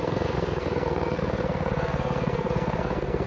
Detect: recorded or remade remade